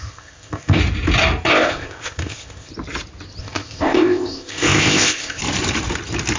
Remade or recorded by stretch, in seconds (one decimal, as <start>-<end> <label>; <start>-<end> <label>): 0.0-0.8 remade; 0.8-1.5 recorded; 1.5-2.7 remade; 2.7-3.4 recorded; 3.4-5.4 remade; 5.4-6.4 recorded